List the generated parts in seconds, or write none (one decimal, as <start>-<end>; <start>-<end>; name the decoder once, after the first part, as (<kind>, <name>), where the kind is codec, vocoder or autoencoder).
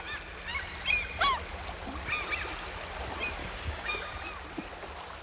3.4-4.1 (codec, DAC)